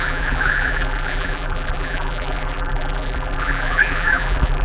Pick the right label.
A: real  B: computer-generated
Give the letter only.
B